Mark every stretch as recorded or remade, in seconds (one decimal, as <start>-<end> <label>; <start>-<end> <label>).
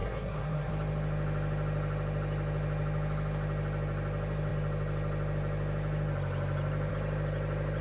0.0-0.7 remade; 0.7-7.8 recorded